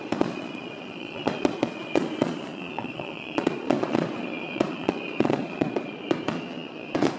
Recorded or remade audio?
remade